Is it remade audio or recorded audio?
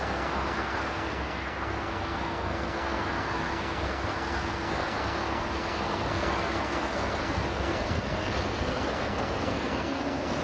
remade